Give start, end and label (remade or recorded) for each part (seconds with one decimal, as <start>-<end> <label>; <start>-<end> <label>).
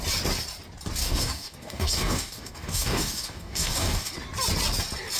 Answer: 0.0-1.0 recorded; 1.0-4.1 remade; 4.1-5.2 recorded